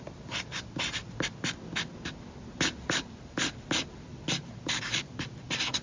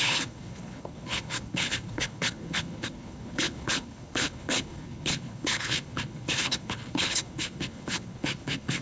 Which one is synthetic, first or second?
second